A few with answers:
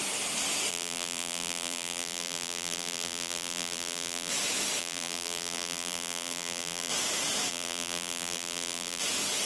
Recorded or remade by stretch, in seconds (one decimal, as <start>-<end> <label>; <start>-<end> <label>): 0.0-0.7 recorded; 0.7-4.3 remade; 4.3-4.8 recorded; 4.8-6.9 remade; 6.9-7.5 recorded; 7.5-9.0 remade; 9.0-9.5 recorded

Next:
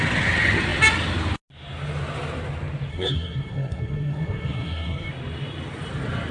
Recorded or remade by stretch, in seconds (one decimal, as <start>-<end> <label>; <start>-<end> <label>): 0.0-2.9 recorded; 2.9-5.1 remade; 5.1-6.3 recorded

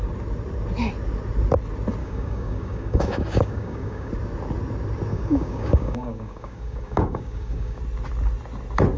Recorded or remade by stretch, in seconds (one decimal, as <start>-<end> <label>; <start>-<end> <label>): 0.0-2.0 recorded; 2.0-4.1 remade; 4.1-5.1 recorded; 5.1-7.8 remade; 7.8-9.0 recorded